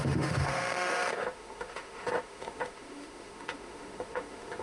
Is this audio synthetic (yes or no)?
yes